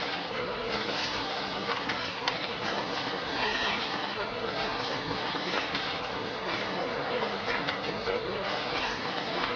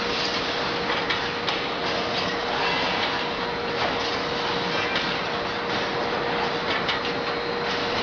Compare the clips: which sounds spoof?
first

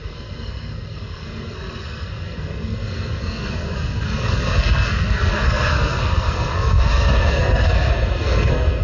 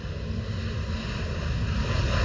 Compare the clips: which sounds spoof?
first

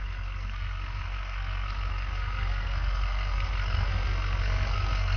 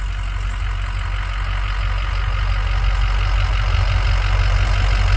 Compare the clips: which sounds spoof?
first